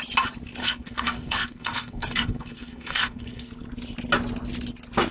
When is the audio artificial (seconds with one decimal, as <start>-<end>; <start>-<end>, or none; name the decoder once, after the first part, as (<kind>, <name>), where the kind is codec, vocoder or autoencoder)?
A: 0.6-3.5 (codec, SNAC)